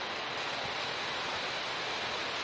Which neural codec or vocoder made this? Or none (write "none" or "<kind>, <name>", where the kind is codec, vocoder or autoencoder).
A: none